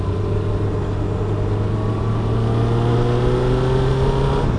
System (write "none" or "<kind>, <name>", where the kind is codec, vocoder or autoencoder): none